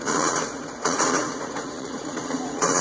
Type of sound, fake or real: fake